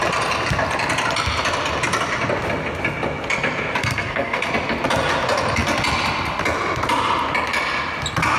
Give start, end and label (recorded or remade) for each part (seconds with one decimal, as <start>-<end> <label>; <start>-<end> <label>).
0.0-3.8 recorded; 3.8-4.5 remade; 4.5-8.4 recorded